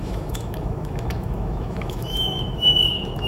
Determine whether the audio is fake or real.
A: fake